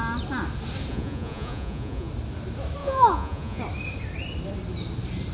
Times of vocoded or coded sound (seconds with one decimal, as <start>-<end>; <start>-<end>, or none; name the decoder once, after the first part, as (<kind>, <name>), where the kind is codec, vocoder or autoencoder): 0.9-2.1 (vocoder, Vocos); 2.8-3.6